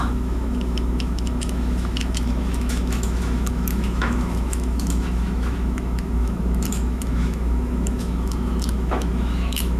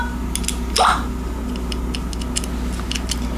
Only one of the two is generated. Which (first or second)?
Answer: first